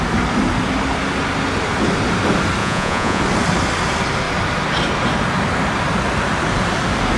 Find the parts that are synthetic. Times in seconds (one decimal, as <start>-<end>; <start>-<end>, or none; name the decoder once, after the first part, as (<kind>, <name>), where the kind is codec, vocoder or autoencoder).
2.6-3.2 (vocoder, Vocos)